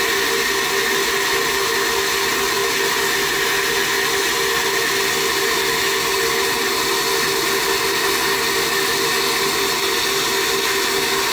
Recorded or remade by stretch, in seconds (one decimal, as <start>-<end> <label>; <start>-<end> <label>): 0.0-11.3 recorded